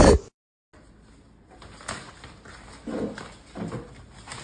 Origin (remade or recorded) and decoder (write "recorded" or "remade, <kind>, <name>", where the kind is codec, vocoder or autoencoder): recorded